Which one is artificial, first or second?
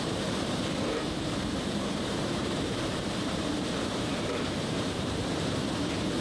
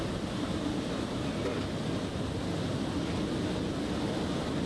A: first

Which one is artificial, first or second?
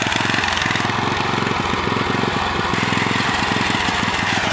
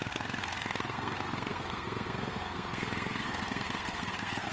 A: second